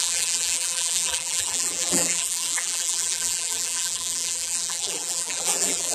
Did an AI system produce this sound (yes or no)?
yes